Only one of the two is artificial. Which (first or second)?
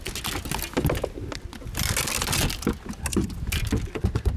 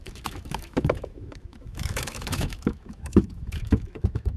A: second